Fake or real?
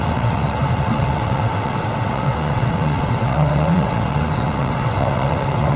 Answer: fake